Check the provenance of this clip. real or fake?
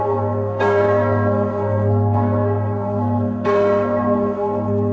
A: fake